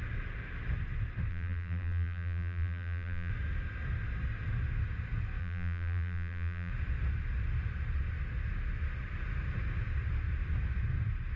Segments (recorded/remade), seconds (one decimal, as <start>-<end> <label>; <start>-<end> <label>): 0.0-1.3 recorded; 1.3-3.3 remade; 3.3-5.4 recorded; 5.4-6.7 remade; 6.7-11.4 recorded